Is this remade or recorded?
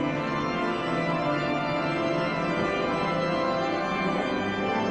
recorded